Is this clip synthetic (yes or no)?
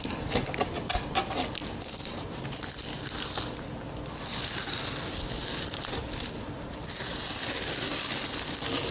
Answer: no